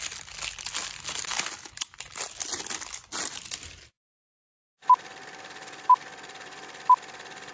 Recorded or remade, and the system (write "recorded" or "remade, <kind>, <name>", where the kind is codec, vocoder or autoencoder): recorded